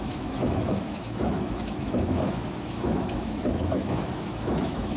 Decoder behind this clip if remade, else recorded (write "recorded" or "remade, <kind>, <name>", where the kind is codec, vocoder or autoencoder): remade, autoencoder, DAC-VAE